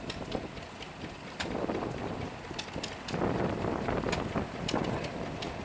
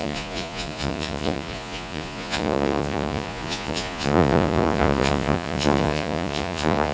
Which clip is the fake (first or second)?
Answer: second